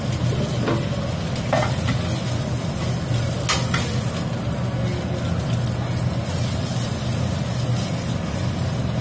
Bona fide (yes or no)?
yes